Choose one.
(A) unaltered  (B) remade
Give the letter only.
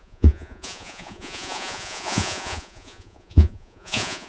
B